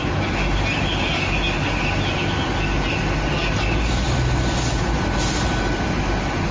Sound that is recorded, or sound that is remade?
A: recorded